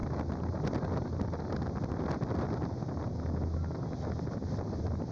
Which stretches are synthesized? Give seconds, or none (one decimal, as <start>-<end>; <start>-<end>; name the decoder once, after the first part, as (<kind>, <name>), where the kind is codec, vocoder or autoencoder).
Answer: none